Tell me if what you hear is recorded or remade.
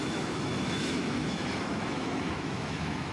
remade